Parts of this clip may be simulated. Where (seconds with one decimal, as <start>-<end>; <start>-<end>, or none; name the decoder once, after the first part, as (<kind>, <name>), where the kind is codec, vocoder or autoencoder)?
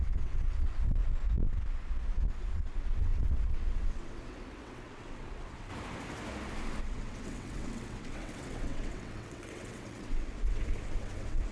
0.0-1.0 (vocoder, WaveNeXt); 2.4-5.7; 6.8-11.5